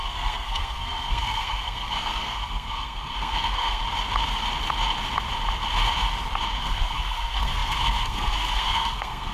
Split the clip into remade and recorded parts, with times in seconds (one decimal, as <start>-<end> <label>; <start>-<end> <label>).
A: 0.0-3.8 remade; 3.8-6.6 recorded; 6.6-9.3 remade